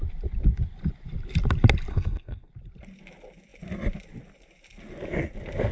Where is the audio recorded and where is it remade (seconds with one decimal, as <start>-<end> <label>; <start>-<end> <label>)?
0.0-1.9 recorded; 1.9-2.5 remade; 2.5-5.7 recorded